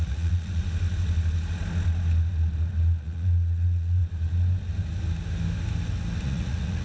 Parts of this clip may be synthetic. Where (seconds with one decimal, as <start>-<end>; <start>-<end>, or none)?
0.0-0.6; 3.0-4.0; 6.2-6.8

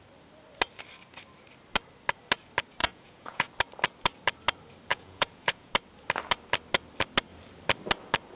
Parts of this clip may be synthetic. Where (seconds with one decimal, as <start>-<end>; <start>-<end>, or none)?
2.8-3.5; 4.9-5.7